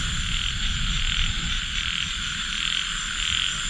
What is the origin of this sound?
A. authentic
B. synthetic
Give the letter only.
A